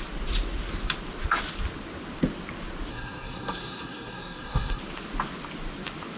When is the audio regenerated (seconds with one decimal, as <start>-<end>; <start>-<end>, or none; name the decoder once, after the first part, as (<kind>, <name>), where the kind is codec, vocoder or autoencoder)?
2.9-4.8 (codec, SNAC)